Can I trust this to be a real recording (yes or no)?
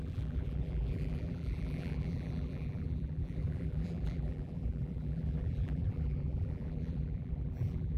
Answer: no